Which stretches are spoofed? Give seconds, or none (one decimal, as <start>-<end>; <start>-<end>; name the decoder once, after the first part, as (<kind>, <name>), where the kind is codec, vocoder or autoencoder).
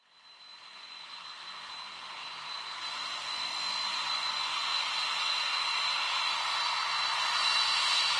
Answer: 0.7-1.3 (vocoder, Vocos); 3.9-5.7